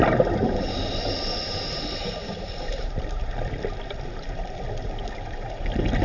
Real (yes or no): yes